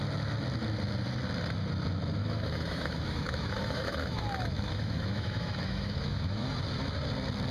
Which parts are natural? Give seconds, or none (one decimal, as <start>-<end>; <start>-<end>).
0.0-2.2; 6.6-7.5